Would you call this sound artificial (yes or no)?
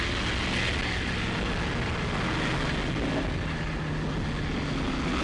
no